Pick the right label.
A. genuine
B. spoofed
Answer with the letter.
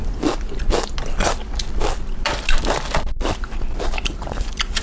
A